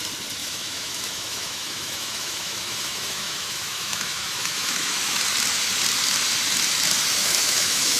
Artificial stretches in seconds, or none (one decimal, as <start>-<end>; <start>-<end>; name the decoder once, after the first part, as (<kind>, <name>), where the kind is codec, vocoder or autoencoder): 0.4-5.2 (autoencoder, DAC-VAE); 7.2-8.0